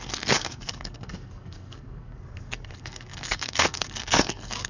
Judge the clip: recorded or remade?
remade